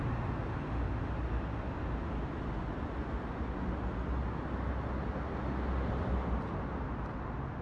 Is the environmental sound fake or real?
real